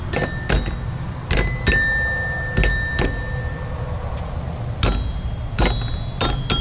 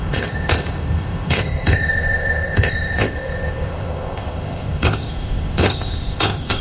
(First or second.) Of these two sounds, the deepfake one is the second